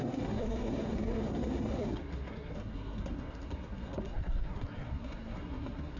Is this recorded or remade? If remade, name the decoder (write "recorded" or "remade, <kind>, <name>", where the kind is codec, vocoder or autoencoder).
remade, codec, SNAC